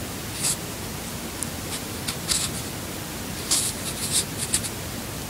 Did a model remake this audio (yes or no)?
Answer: no